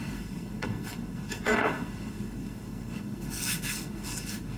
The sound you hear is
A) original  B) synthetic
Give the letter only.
B